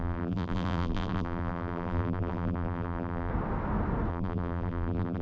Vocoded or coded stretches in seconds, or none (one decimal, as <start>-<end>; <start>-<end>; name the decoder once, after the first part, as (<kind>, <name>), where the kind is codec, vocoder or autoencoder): 0.0-3.3 (vocoder, BigVGAN v2); 4.1-5.2